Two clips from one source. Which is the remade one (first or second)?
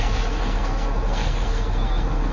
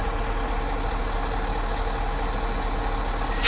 first